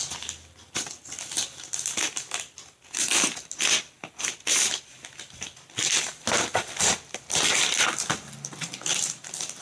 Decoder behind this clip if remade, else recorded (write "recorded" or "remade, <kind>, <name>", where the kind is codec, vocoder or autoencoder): recorded